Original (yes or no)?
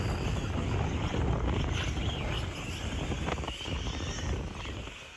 yes